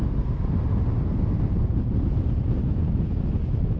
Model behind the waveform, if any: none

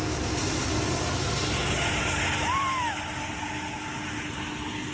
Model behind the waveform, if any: none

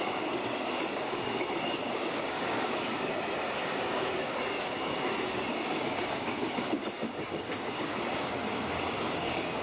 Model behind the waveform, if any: codec, DAC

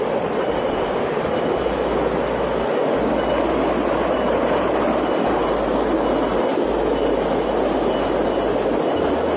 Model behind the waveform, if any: none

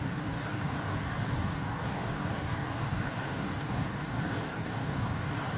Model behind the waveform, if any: codec, DAC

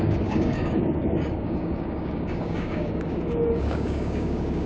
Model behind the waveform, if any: codec, DAC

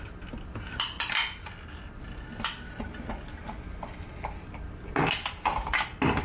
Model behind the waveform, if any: none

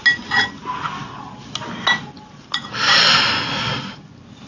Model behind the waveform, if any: none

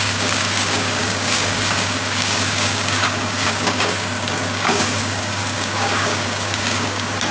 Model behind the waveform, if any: codec, DAC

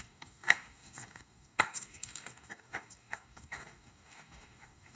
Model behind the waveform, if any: codec, DAC